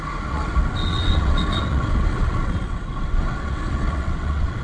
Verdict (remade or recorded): remade